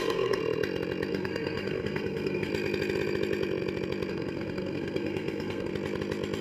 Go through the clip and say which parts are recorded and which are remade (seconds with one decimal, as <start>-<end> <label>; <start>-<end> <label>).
0.0-0.4 remade; 0.4-1.1 recorded; 1.1-2.5 remade; 2.5-4.1 recorded; 4.1-5.7 remade; 5.7-6.4 recorded